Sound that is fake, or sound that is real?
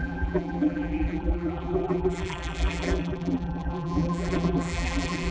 fake